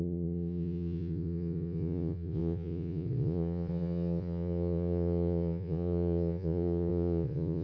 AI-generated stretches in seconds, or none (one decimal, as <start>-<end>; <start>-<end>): 0.0-7.6